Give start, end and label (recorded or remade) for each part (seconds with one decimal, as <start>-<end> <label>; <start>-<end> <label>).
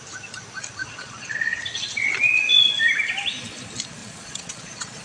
0.0-0.8 recorded; 0.8-1.6 remade; 1.6-4.0 recorded; 4.0-5.0 remade